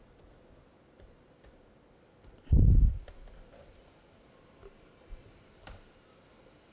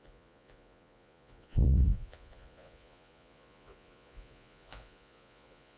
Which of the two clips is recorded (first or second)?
first